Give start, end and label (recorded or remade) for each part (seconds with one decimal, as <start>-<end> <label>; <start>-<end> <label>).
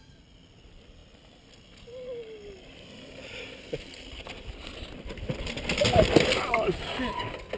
0.0-7.6 recorded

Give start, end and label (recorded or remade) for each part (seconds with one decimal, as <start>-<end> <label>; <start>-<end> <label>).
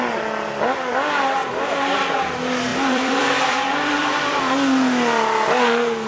0.0-2.7 recorded; 2.7-4.4 remade; 4.4-6.1 recorded